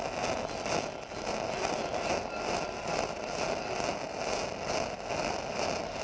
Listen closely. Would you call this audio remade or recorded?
recorded